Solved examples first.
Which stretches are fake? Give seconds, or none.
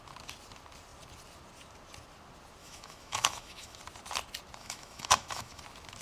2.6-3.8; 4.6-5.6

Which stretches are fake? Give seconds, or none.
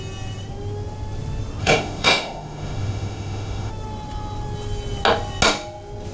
1.6-3.7